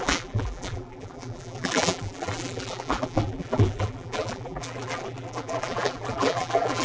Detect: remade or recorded remade